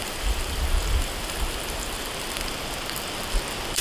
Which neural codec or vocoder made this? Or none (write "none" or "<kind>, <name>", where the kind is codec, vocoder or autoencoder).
none